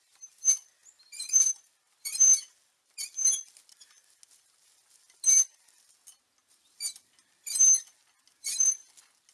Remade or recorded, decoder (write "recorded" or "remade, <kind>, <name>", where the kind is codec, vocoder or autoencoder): recorded